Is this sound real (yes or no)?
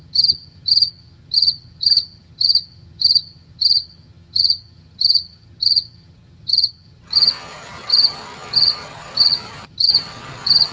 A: no